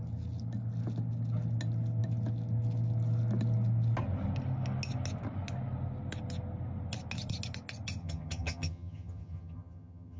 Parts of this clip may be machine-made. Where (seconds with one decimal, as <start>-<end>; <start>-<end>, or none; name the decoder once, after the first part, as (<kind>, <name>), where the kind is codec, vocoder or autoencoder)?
8.0-10.2 (vocoder, HiFi-GAN)